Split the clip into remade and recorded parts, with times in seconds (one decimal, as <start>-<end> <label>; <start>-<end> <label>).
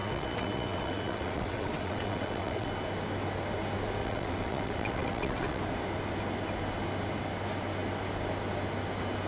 0.0-2.7 remade; 2.7-4.0 recorded; 4.0-5.6 remade; 5.6-9.3 recorded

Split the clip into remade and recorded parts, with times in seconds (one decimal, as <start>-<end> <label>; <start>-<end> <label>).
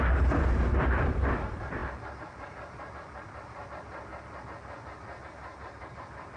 0.0-4.1 remade; 4.1-5.8 recorded; 5.8-6.4 remade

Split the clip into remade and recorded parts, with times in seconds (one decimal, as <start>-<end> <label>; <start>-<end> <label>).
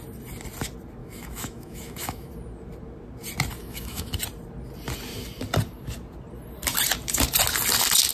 0.0-1.0 recorded; 1.0-2.3 remade; 2.3-3.6 recorded; 3.6-4.1 remade; 4.1-8.1 recorded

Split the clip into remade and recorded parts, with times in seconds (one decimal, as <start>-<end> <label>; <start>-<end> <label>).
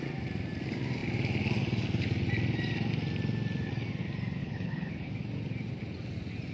0.0-4.4 recorded; 4.4-5.1 remade; 5.1-6.5 recorded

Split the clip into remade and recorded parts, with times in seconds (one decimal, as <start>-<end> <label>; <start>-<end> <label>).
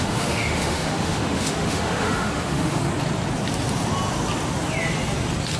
0.0-2.8 remade; 2.8-5.6 recorded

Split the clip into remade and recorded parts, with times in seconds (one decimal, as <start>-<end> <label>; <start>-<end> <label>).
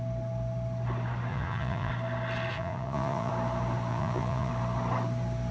0.0-1.3 recorded; 1.3-1.9 remade; 1.9-2.5 recorded; 2.5-3.3 remade; 3.3-3.9 recorded; 3.9-4.5 remade; 4.5-5.5 recorded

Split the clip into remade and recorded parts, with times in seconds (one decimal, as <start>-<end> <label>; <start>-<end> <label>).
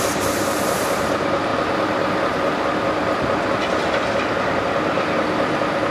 0.0-5.9 recorded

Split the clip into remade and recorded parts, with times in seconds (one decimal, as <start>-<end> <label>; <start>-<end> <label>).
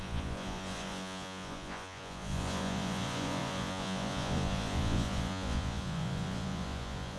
0.0-7.2 remade